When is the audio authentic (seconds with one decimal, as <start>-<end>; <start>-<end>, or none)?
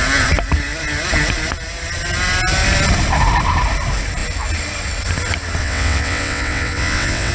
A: 0.0-5.6